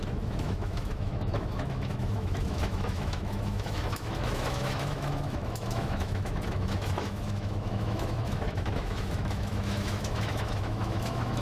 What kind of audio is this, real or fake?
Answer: fake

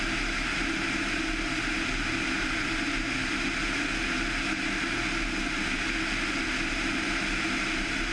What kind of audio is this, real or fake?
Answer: real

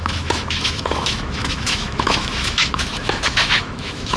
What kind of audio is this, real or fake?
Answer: fake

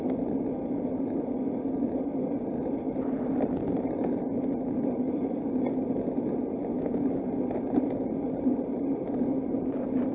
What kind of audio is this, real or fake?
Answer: real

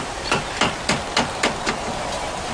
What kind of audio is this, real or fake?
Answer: real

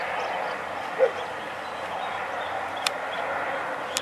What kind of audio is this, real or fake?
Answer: real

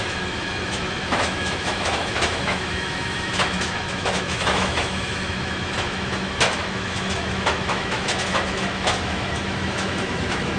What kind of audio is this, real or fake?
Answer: fake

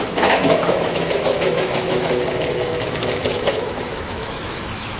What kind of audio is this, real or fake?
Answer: fake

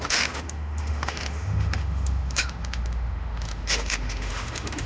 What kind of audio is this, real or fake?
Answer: fake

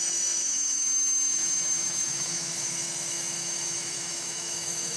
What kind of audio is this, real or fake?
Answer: fake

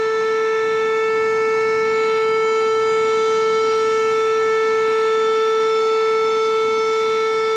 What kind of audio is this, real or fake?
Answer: fake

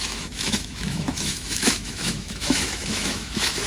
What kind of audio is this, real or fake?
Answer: fake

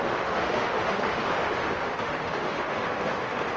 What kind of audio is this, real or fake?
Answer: fake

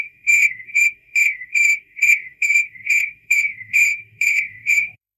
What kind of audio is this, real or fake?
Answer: fake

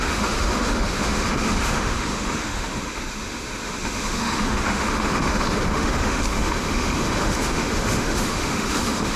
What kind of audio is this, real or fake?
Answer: fake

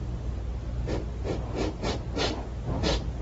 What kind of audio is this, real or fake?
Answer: real